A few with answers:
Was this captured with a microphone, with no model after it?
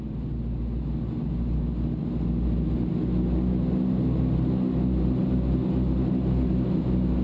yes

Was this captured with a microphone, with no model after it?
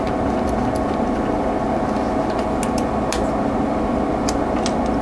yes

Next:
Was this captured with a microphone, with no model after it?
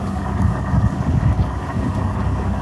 no